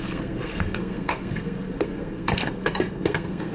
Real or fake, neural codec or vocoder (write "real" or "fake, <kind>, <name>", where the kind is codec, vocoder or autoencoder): fake, codec, SNAC